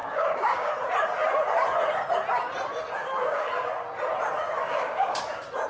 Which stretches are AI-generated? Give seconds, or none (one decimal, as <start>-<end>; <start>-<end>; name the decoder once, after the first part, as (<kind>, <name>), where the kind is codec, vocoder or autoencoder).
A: 0.0-0.7 (codec, DAC); 3.0-3.5; 4.6-5.2